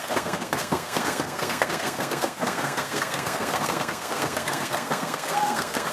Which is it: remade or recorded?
remade